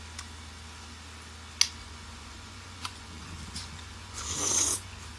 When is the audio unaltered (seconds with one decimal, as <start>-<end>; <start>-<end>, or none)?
0.0-1.8